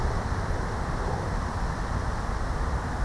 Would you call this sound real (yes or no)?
yes